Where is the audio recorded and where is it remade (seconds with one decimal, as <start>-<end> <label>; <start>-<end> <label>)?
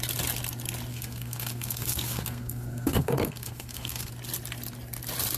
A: 0.0-0.9 recorded; 0.9-4.1 remade; 4.1-5.4 recorded